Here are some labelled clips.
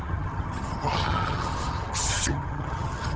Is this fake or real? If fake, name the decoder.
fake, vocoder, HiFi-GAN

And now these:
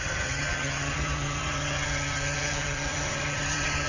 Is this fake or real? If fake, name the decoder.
fake, vocoder, HiFi-GAN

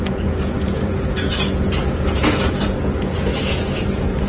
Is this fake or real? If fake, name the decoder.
fake, vocoder, Vocos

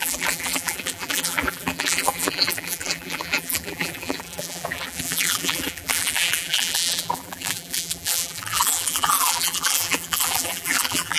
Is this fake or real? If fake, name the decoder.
fake, vocoder, BigVGAN v2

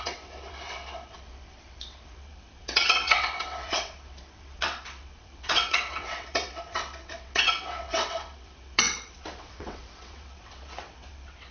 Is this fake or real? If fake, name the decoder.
fake, vocoder, WaveNeXt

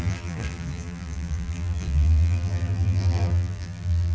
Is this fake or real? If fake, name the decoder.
fake, vocoder, BigVGAN v2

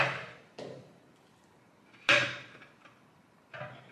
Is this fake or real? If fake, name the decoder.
real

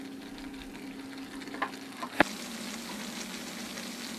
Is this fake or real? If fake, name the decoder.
real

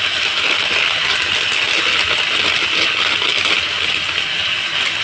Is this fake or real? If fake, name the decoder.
real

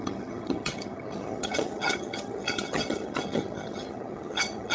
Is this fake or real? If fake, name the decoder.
fake, vocoder, HiFi-GAN